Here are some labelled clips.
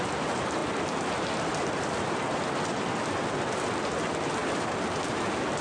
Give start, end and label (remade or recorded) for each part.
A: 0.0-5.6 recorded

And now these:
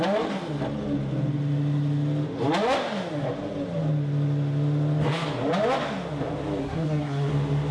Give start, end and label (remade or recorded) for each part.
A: 0.0-6.6 recorded; 6.6-7.3 remade; 7.3-7.7 recorded